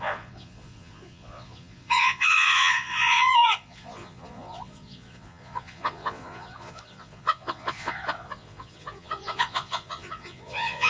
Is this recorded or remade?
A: remade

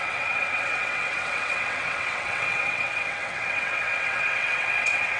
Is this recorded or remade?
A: remade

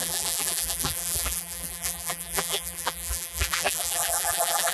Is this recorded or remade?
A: remade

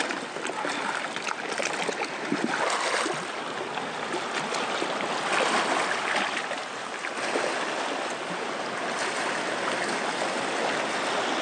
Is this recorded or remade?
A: recorded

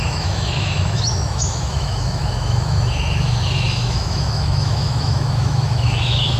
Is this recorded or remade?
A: remade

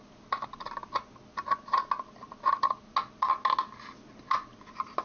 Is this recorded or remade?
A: recorded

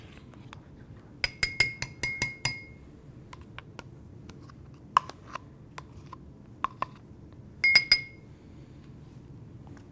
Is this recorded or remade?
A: recorded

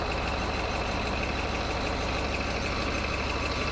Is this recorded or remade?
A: recorded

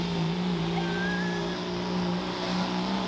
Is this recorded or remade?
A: recorded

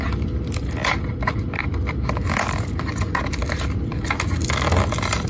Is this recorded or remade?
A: recorded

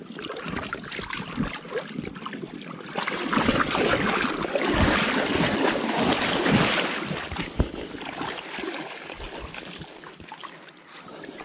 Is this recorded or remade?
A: recorded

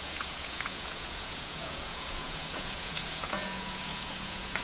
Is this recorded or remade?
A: remade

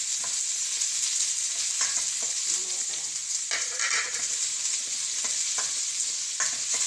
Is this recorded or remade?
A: recorded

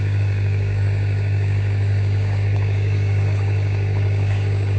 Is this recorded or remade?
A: remade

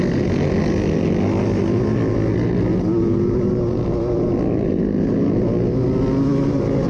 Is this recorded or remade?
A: recorded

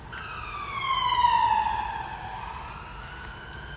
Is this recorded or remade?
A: recorded